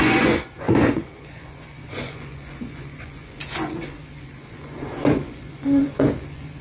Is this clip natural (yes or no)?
no